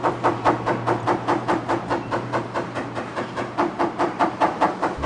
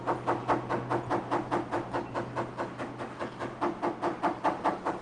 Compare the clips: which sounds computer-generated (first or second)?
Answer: first